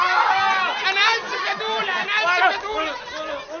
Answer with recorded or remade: recorded